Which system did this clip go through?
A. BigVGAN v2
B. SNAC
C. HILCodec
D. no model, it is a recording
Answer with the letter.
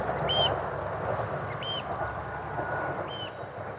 D